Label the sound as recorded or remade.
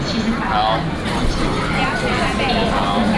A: recorded